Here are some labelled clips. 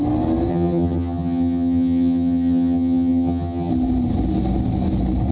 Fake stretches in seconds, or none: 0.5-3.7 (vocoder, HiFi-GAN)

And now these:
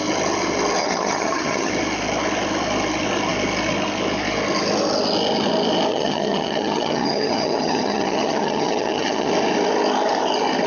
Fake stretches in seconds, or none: 0.8-1.7 (vocoder, HiFi-GAN); 5.9-9.3

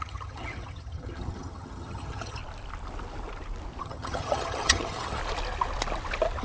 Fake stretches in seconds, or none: 0.0-2.4 (vocoder, HiFi-GAN); 3.8-5.2

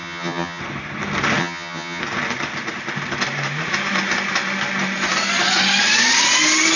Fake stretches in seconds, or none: 0.0-0.6 (vocoder, HiFi-GAN); 1.4-2.0

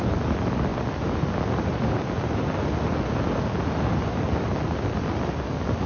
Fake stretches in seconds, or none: none

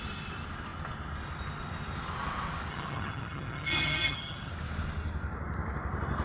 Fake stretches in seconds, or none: 2.7-4.5 (vocoder, HiFi-GAN)

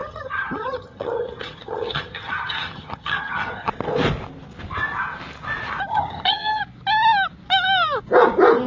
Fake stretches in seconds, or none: 0.0-3.7 (vocoder, HiFi-GAN); 5.9-6.6